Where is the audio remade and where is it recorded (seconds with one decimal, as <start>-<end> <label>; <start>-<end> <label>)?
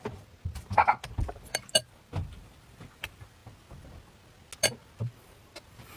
0.0-6.0 recorded